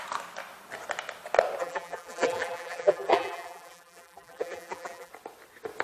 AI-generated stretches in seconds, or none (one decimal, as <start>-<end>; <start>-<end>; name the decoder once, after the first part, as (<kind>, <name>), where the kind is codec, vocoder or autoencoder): 1.6-5.1 (vocoder, BigVGAN v2)